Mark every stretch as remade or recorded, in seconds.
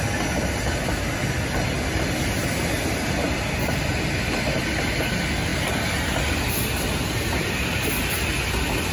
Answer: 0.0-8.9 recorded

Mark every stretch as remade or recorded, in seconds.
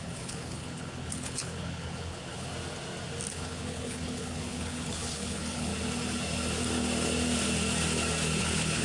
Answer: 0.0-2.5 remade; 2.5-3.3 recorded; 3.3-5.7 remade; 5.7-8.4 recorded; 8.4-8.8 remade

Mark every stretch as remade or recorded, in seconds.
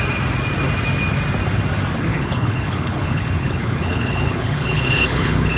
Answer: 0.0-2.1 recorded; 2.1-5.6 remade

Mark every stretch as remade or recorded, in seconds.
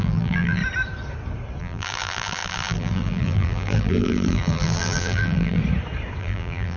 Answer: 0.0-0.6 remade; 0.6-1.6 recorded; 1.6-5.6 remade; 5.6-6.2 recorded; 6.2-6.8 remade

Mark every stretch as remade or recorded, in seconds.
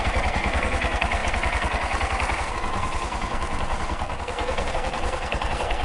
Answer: 0.0-5.8 remade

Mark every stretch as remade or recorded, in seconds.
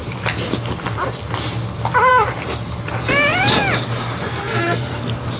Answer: 0.0-4.2 recorded; 4.2-5.0 remade; 5.0-5.4 recorded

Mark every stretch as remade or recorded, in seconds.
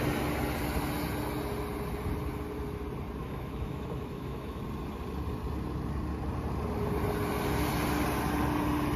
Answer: 0.0-3.2 recorded; 3.2-4.6 remade; 4.6-9.0 recorded